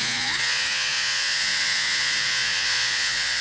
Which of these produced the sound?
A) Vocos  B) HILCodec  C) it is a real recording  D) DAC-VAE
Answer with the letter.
A